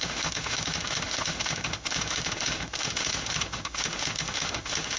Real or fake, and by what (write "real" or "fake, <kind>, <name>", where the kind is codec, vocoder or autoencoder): fake, autoencoder, DAC-VAE